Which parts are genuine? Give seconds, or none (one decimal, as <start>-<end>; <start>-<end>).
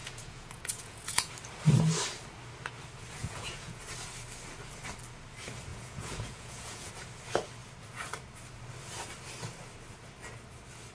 1.3-3.2; 3.8-5.7; 6.9-10.9